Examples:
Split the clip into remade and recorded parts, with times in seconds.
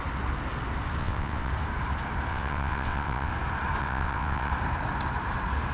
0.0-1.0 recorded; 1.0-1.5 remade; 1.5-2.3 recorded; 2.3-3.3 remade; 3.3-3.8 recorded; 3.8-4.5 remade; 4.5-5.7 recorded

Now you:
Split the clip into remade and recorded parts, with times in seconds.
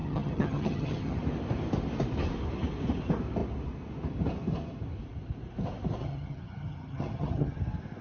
0.0-1.2 remade; 1.2-6.0 recorded; 6.0-7.6 remade; 7.6-8.0 recorded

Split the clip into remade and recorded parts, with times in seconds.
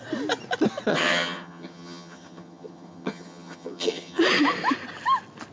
0.0-0.9 recorded; 0.9-4.2 remade; 4.2-5.5 recorded